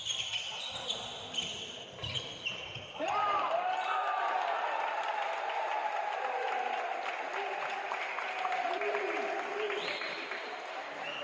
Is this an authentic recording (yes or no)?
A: yes